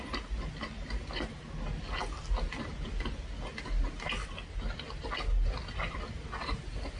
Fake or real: real